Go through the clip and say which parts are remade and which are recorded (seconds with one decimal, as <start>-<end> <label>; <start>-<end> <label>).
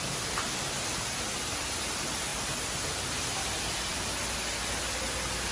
0.0-5.5 recorded